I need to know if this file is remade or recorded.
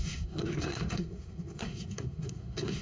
remade